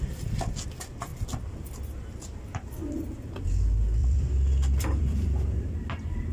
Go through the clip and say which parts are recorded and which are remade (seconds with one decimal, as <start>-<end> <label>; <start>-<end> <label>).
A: 0.0-1.1 recorded; 1.1-2.7 remade; 2.7-4.0 recorded; 4.0-5.7 remade; 5.7-6.3 recorded